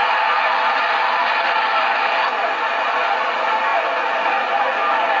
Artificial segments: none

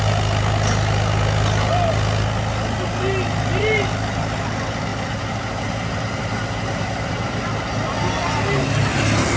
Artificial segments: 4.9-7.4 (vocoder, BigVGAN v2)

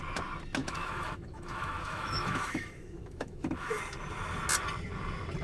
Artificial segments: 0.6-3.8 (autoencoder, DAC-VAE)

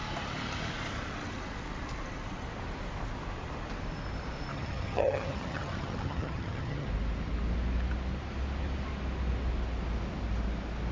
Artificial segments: 4.5-6.9 (vocoder, HiFi-GAN)

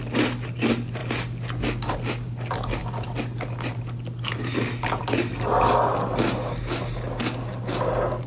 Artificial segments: none

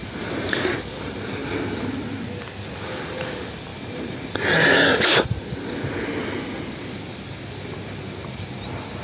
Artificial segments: none

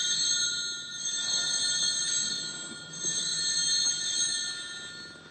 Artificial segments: none